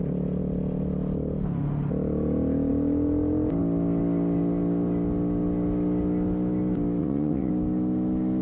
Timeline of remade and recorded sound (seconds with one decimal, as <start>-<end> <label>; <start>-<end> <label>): 0.0-7.0 recorded; 7.0-7.5 remade; 7.5-8.4 recorded